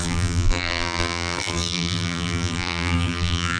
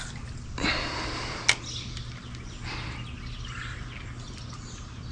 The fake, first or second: first